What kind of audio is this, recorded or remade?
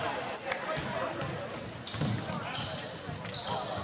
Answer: recorded